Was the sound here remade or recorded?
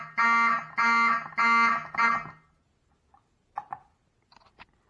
recorded